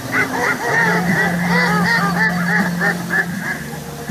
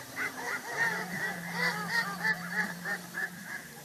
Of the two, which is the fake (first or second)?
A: second